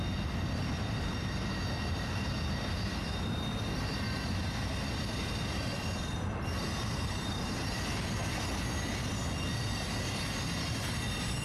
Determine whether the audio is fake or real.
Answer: real